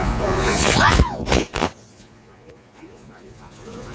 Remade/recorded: remade